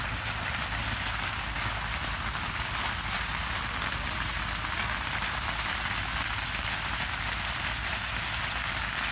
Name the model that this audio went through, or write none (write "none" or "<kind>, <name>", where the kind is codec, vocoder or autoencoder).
none